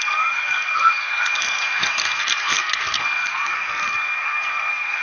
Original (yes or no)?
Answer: no